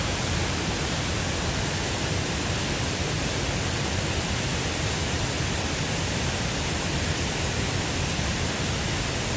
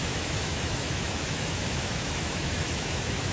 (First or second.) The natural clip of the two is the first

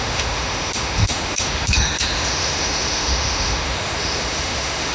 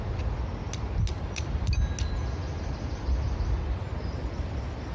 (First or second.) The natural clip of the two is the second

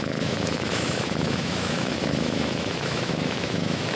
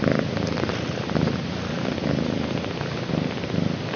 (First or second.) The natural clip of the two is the second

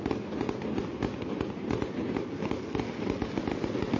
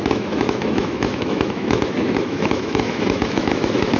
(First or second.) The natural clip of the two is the first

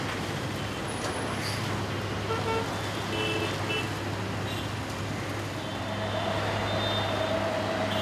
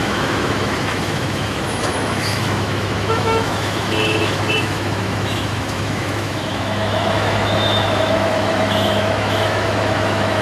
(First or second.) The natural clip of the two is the first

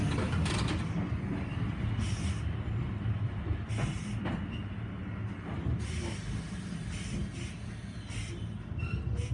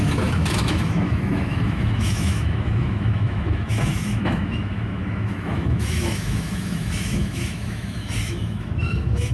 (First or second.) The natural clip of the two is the first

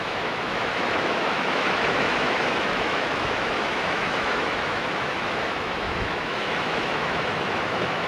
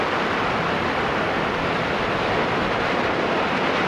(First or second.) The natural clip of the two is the second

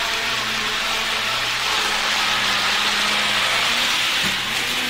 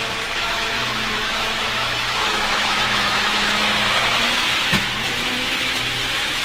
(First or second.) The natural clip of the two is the first